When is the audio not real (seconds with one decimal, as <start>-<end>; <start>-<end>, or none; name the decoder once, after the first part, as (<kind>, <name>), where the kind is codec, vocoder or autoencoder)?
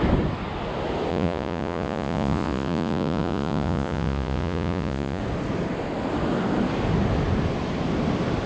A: 1.1-5.2 (vocoder, Vocos)